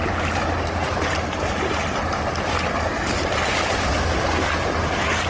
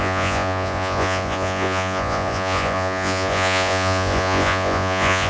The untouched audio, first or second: first